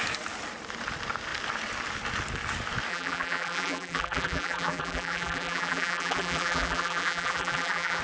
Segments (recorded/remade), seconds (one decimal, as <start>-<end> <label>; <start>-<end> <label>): 0.0-2.9 recorded; 2.9-8.0 remade